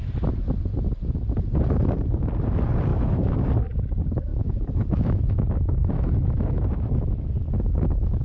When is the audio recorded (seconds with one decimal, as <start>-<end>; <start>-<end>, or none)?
0.0-2.9; 3.5-4.3; 7.2-8.2